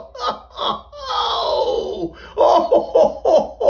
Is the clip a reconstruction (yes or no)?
no